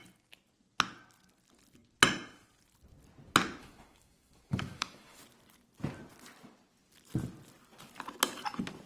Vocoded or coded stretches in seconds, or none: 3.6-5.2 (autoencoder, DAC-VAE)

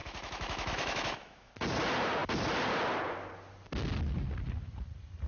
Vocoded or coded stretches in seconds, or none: 0.0-1.5 (autoencoder, DAC-VAE)

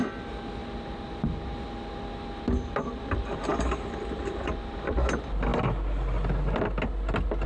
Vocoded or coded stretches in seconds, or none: none

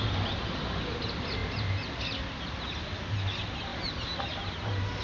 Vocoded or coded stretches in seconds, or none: none

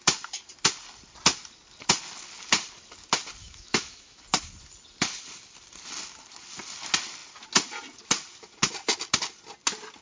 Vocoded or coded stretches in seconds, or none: 3.4-4.2 (autoencoder, DAC-VAE)

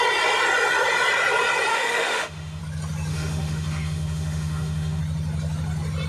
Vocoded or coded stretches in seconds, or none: 1.7-2.6 (autoencoder, DAC-VAE); 3.1-5.0